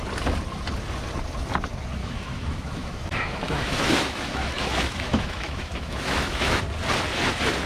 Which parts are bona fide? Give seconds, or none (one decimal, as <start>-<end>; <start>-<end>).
0.0-2.0; 6.6-7.7